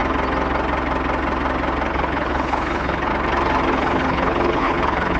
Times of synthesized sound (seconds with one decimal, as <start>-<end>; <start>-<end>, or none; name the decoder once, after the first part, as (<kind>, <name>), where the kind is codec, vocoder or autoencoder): 1.9-3.1 (codec, HILCodec); 3.7-5.2